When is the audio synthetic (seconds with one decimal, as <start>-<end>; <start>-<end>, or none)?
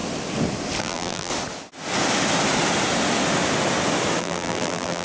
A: 0.8-1.3; 4.2-5.0